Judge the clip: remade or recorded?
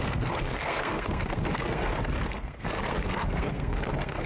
remade